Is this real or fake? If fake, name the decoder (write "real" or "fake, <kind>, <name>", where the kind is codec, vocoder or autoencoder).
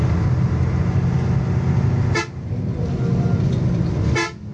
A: real